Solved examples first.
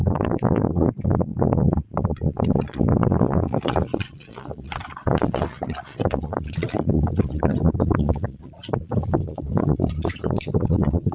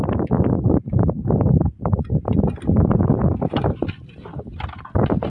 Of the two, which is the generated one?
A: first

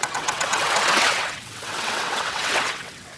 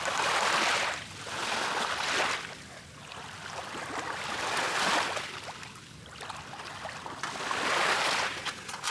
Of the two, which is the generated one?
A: first